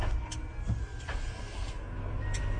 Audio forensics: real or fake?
real